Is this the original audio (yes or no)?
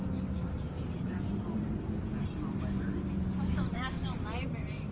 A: yes